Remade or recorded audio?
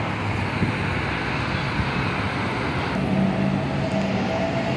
recorded